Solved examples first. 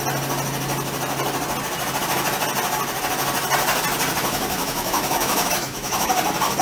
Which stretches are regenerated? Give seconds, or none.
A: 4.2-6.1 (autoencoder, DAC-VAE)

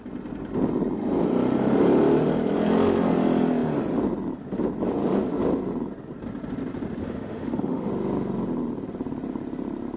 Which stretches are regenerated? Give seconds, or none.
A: 7.0-7.9 (autoencoder, DAC-VAE)

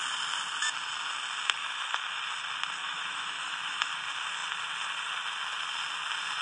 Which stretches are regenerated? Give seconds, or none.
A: 1.6-2.2 (autoencoder, DAC-VAE); 2.8-3.9

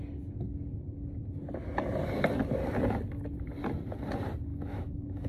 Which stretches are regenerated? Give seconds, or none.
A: 4.5-5.3 (autoencoder, DAC-VAE)

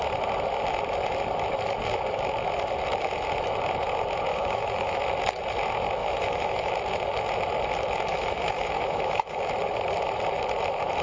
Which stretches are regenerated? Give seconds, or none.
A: 4.3-5.0 (autoencoder, DAC-VAE); 6.0-6.7; 8.1-9.5

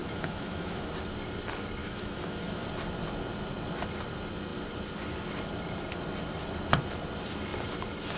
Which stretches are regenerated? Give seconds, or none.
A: 0.0-0.9 (autoencoder, DAC-VAE); 1.8-2.6

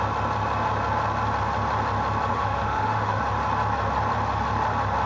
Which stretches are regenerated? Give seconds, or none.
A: 2.3-3.2 (autoencoder, DAC-VAE)

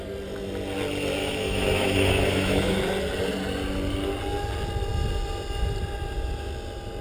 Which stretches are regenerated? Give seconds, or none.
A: 1.2-2.8 (autoencoder, DAC-VAE)